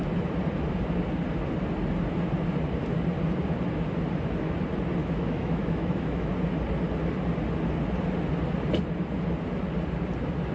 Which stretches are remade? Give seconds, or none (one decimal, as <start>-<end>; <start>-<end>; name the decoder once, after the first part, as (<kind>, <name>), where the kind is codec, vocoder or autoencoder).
5.0-6.3 (autoencoder, DAC-VAE)